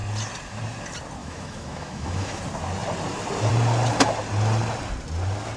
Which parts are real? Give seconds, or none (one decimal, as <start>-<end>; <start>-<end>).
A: 0.0-1.2; 2.4-5.6